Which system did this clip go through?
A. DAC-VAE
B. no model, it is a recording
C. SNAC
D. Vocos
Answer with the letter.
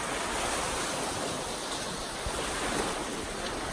B